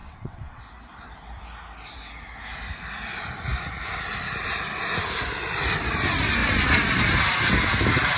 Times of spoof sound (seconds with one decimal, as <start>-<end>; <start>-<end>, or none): 0.0-0.6